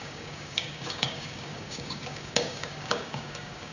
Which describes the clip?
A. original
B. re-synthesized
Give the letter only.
B